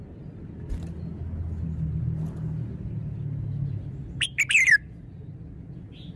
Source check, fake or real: real